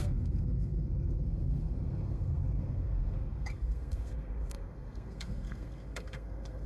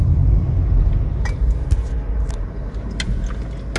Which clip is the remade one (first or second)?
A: first